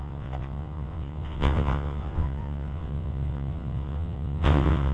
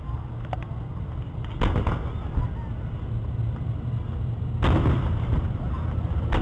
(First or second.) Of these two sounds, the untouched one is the second